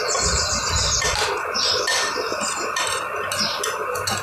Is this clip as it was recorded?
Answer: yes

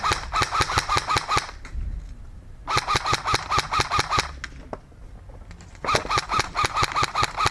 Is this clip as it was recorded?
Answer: yes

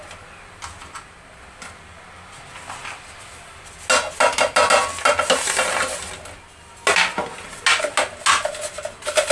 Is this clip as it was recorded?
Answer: yes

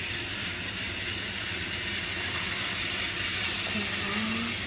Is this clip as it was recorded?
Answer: yes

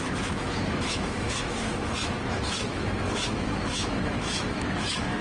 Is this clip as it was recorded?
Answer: no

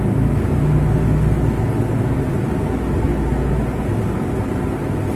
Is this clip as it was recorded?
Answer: yes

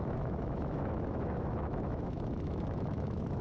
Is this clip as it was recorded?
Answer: no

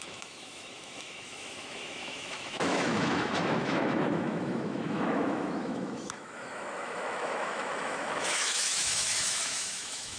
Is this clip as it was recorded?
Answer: no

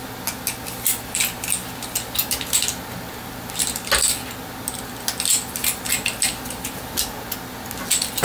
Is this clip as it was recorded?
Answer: yes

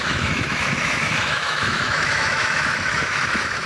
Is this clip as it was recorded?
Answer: no